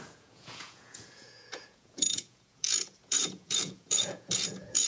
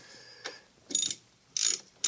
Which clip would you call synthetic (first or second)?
first